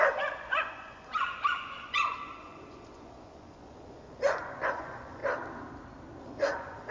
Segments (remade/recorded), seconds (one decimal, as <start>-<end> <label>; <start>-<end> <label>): 0.0-5.2 remade; 5.2-6.2 recorded; 6.2-6.9 remade